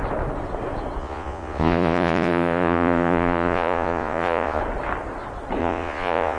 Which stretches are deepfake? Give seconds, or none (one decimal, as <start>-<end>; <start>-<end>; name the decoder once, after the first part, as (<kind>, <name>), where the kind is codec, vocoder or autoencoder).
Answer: 1.0-4.6 (vocoder, Vocos); 5.6-6.4

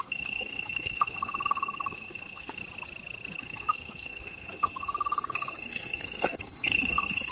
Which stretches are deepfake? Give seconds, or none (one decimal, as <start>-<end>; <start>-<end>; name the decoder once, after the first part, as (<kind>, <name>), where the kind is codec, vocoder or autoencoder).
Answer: 0.0-2.6 (codec, SNAC); 3.4-7.3

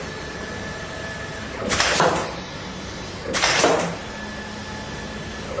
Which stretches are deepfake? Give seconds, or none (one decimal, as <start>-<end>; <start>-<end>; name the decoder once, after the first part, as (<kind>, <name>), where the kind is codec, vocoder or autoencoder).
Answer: none

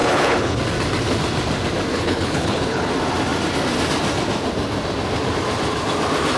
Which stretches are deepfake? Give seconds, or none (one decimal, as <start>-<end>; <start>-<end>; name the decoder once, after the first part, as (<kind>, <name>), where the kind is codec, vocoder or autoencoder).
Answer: 0.0-0.6 (codec, HILCodec); 1.9-2.9

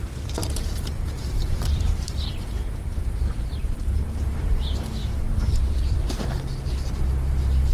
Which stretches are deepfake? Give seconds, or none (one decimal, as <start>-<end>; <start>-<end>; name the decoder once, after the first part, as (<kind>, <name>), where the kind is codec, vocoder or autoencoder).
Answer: 0.4-4.6 (vocoder, BigVGAN v2); 5.0-6.4

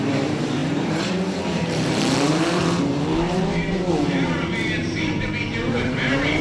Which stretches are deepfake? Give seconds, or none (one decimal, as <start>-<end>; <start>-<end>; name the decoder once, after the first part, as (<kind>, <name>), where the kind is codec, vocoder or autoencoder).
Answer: 0.0-6.4 (vocoder, BigVGAN v2)

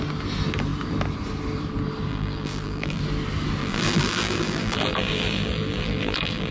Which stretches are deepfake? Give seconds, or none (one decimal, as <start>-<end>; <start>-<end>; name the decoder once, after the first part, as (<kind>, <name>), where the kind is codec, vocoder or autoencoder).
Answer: 2.1-3.0 (vocoder, BigVGAN v2); 3.6-6.5

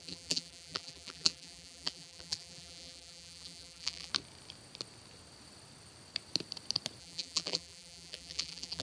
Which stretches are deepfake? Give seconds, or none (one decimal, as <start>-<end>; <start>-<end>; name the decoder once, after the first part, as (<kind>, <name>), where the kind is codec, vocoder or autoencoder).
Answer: 0.0-4.1 (vocoder, BigVGAN v2); 7.0-8.8